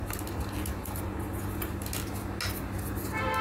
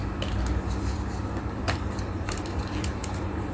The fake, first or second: second